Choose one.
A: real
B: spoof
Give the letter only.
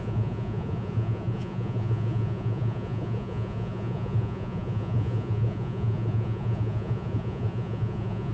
B